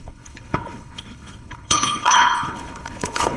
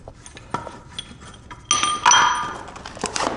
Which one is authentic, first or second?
second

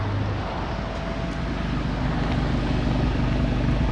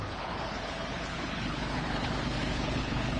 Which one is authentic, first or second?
first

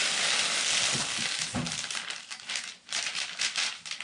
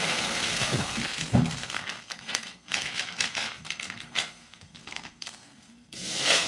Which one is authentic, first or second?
first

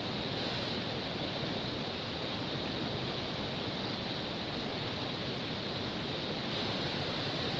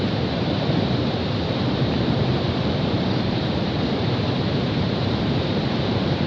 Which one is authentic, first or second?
first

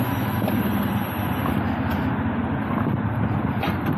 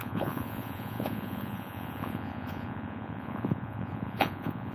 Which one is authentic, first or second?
first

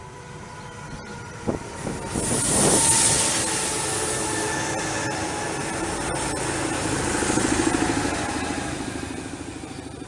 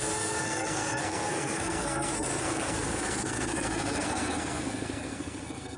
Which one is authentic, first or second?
first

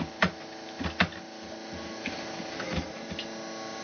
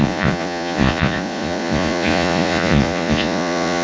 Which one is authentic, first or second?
first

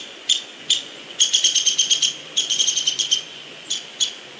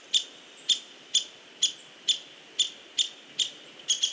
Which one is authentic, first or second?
second